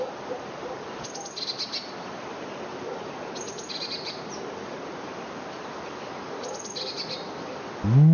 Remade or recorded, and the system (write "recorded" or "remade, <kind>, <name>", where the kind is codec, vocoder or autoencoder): recorded